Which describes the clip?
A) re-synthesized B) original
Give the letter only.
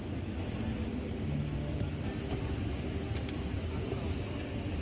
B